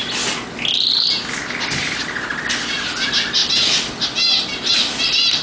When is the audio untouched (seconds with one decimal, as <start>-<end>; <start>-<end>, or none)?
0.0-5.4